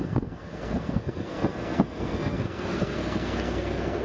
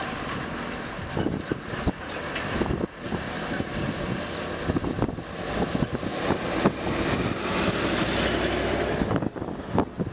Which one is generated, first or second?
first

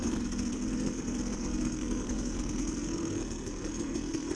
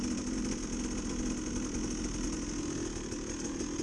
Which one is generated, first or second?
first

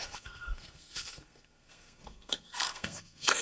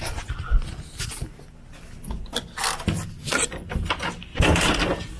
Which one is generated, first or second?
first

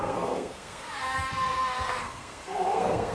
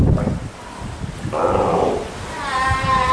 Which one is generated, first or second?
first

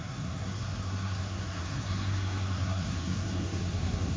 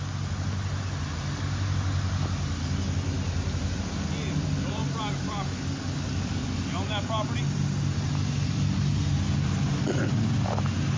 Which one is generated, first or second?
first